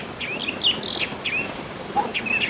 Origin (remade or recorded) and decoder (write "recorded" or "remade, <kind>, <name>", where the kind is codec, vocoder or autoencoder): recorded